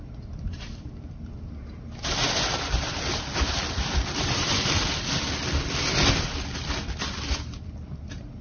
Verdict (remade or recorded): recorded